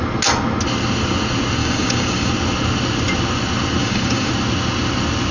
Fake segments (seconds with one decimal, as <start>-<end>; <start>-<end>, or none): 1.6-2.3; 3.8-4.3